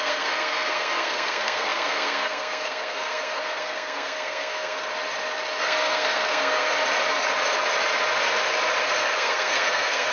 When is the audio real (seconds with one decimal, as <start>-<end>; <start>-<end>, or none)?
4.9-5.6; 6.7-8.8